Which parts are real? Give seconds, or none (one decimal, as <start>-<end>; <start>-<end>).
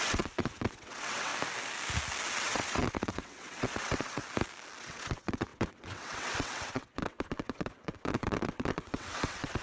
1.3-2.4; 4.2-4.8